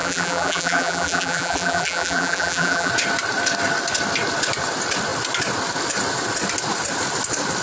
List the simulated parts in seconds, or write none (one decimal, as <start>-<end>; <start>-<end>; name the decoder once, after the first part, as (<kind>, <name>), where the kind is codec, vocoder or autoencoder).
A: 0.0-2.9 (vocoder, BigVGAN v2)